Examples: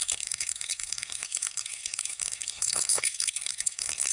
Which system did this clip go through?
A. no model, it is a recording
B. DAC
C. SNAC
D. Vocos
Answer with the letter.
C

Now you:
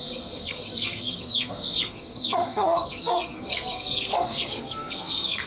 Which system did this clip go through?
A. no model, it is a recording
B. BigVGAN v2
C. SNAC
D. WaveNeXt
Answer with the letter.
C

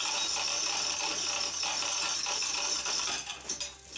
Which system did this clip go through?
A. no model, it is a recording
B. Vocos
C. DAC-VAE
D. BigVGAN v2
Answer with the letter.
A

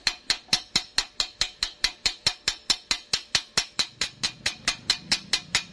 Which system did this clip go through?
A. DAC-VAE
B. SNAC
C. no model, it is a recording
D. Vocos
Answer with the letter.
C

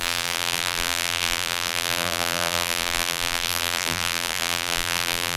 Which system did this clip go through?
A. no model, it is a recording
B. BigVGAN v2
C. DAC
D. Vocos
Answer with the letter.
B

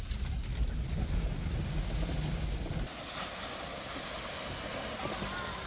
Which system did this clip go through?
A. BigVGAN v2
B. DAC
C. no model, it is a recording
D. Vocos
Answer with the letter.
C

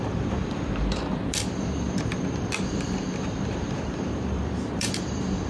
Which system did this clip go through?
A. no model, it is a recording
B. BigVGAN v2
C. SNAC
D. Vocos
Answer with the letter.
B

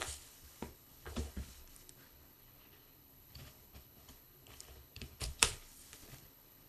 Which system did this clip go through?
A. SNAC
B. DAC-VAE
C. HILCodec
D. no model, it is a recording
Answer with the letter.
C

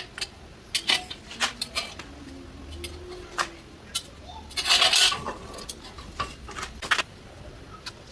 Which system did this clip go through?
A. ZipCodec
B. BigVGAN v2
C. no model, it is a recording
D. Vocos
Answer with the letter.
C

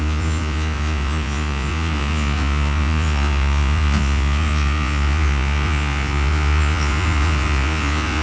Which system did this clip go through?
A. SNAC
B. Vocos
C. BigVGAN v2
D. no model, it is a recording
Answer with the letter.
B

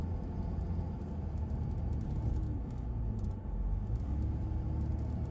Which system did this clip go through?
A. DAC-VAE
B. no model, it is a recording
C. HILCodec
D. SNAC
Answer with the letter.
B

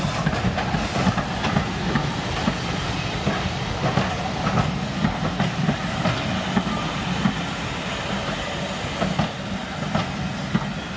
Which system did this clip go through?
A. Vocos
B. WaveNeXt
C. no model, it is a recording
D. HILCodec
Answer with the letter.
C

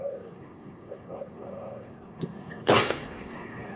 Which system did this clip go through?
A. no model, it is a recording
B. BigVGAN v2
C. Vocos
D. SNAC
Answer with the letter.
D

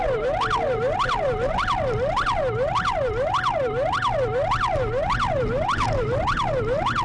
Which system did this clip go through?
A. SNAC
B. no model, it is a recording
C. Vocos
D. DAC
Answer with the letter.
B